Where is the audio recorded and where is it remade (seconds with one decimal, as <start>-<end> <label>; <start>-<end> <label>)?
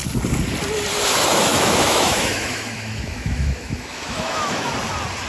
0.0-1.5 recorded; 1.5-4.7 remade; 4.7-5.3 recorded